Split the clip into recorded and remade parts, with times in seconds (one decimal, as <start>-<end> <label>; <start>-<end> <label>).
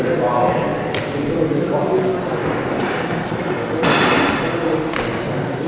0.0-0.7 recorded; 0.7-1.5 remade; 1.5-5.7 recorded